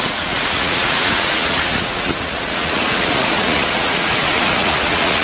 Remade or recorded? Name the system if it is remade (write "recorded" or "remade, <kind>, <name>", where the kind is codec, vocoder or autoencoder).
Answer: remade, vocoder, Vocos